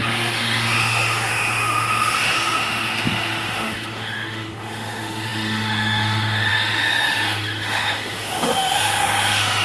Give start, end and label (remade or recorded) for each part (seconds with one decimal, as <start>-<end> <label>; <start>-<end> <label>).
0.0-9.6 remade